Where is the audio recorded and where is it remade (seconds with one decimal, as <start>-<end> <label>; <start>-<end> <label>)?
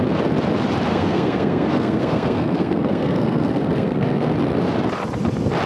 0.0-0.9 recorded; 0.9-4.3 remade; 4.3-5.7 recorded